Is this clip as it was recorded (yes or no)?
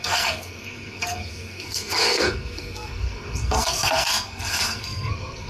no